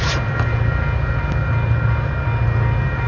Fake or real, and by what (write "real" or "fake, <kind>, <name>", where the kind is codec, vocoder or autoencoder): real